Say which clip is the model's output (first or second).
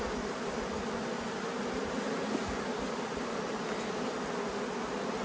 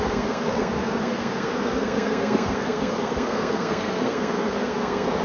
second